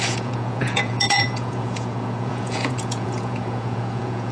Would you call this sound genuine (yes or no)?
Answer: no